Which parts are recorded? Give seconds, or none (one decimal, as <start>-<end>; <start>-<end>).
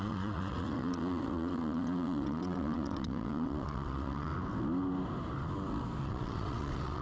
4.3-6.0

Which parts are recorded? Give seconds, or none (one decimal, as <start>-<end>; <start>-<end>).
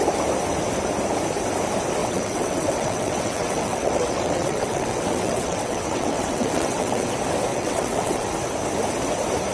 0.0-2.0; 7.1-7.5; 8.3-9.5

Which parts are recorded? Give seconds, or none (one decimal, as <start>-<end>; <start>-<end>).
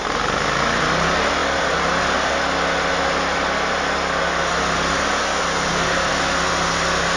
0.0-7.2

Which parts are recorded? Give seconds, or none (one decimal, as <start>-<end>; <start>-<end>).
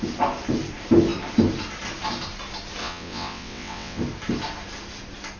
0.0-2.8; 4.0-5.4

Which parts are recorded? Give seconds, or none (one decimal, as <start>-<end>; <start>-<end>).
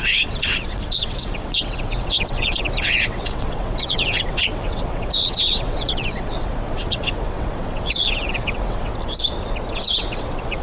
8.9-9.7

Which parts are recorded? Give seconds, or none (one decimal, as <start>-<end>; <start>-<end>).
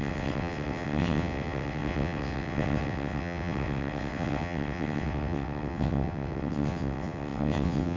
none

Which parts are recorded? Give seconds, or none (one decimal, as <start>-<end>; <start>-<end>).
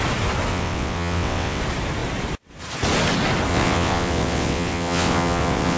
0.0-0.5; 1.6-3.5